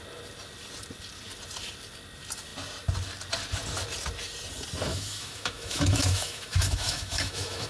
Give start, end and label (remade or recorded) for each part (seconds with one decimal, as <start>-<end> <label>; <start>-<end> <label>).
0.0-4.9 recorded; 4.9-7.7 remade